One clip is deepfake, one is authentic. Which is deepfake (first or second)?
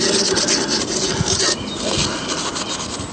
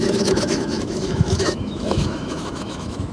second